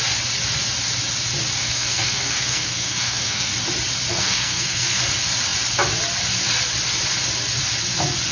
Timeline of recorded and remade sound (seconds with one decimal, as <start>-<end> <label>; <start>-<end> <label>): 0.0-1.6 recorded; 1.6-3.5 remade; 3.5-4.1 recorded; 4.1-5.0 remade; 5.0-8.3 recorded